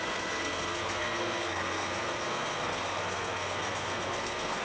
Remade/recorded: remade